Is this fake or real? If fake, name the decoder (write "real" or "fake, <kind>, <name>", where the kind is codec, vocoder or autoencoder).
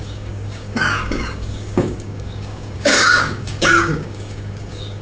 fake, codec, DAC